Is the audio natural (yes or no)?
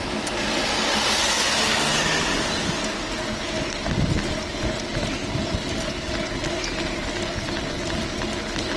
yes